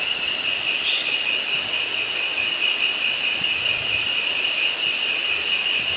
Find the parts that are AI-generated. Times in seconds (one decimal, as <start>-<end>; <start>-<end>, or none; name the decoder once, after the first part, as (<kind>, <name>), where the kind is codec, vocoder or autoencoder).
none